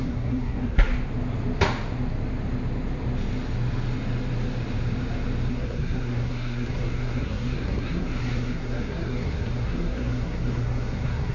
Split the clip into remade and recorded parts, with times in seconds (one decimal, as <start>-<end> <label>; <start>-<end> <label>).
0.0-0.9 remade; 0.9-5.5 recorded; 5.5-11.3 remade